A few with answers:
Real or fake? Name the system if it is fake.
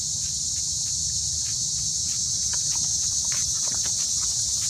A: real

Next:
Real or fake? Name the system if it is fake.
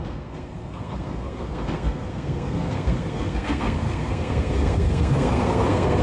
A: fake, codec, SNAC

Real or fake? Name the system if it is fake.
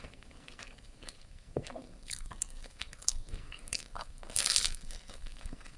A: fake, codec, SNAC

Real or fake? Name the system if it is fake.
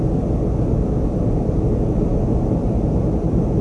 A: real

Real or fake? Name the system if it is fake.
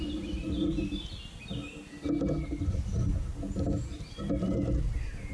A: real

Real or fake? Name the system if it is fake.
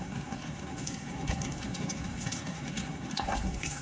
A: fake, codec, SNAC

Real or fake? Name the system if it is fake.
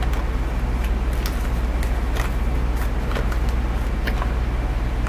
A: real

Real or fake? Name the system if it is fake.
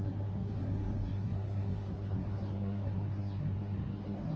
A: fake, codec, SNAC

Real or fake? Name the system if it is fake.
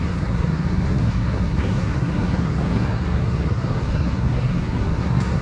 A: fake, codec, SNAC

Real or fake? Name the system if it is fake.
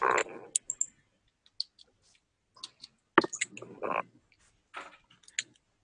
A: real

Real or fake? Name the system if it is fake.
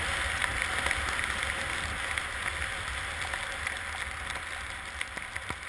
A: real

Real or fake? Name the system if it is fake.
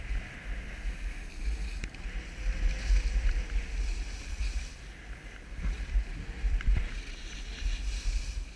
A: real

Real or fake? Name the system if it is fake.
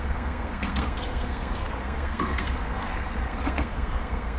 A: fake, codec, SNAC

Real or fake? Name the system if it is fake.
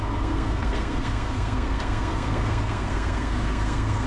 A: fake, codec, SNAC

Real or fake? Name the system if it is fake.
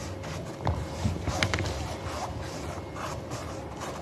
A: real